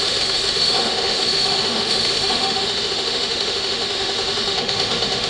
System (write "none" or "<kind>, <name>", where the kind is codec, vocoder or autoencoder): autoencoder, DAC-VAE